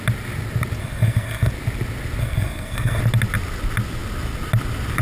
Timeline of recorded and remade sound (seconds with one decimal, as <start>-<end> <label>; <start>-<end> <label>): 0.0-0.8 recorded; 0.8-1.5 remade; 1.5-2.2 recorded; 2.2-3.0 remade; 3.0-5.0 recorded